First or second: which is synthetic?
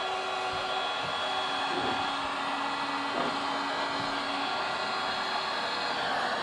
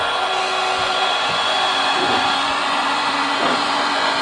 second